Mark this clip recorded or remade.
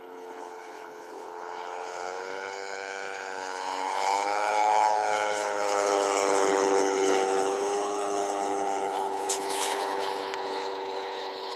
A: remade